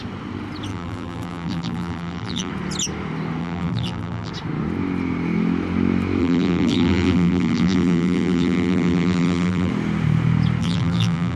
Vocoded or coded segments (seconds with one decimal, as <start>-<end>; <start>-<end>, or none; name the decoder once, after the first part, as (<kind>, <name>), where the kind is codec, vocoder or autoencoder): 0.7-2.5 (vocoder, BigVGAN v2); 3.4-4.3; 6.2-9.7; 10.6-11.4